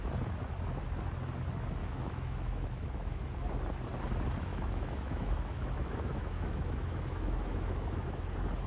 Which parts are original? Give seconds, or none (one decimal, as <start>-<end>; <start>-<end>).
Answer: 0.0-1.8; 3.2-4.5; 8.2-8.7